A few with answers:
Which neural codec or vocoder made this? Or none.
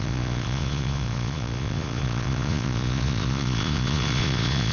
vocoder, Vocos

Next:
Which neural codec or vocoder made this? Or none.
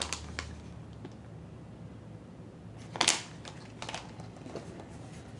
none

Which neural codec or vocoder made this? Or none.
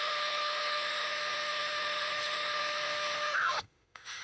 autoencoder, DAC-VAE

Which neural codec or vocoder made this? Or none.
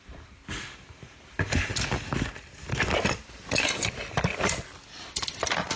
none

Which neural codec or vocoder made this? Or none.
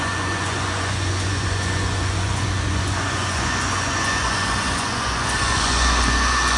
vocoder, Vocos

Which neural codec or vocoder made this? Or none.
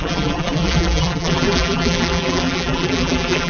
vocoder, BigVGAN v2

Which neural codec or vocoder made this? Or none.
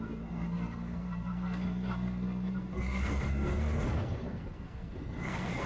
codec, SNAC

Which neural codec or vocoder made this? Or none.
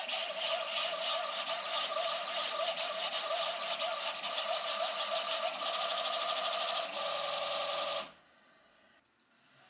none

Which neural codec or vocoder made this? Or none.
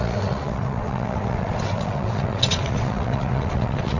vocoder, WaveNeXt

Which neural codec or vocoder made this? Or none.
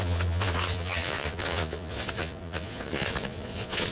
vocoder, Vocos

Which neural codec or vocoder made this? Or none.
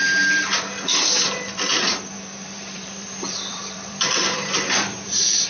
vocoder, BigVGAN v2